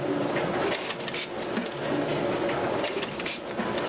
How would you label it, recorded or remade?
recorded